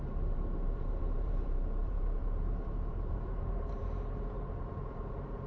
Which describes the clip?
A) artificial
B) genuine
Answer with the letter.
A